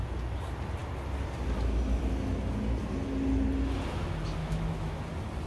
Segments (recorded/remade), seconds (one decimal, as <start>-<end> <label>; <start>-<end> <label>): 0.0-4.4 recorded; 4.4-5.0 remade; 5.0-5.5 recorded